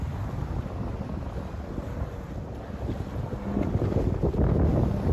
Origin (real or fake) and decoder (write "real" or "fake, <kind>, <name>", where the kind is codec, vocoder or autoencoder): real